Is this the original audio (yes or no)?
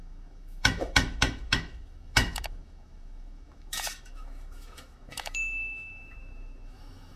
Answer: no